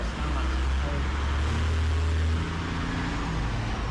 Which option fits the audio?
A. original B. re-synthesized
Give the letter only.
A